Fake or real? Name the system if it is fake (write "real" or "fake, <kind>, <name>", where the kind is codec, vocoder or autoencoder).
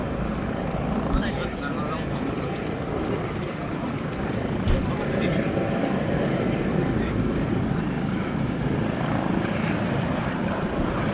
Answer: fake, vocoder, BigVGAN v2